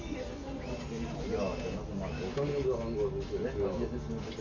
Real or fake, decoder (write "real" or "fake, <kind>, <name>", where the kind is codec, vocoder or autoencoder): real